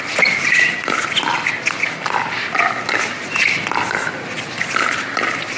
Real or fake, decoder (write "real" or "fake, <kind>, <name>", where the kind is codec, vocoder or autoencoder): real